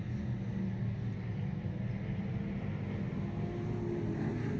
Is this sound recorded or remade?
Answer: recorded